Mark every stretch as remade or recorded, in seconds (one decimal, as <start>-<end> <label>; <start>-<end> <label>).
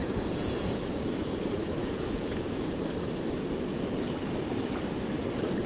0.0-1.4 remade; 1.4-1.8 recorded; 1.8-2.8 remade; 2.8-5.7 recorded